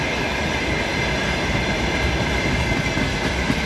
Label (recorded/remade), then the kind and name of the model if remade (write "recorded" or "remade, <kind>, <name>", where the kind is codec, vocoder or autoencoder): recorded